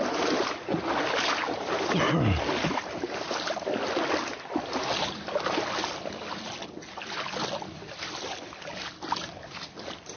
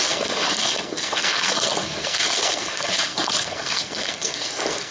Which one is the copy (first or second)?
second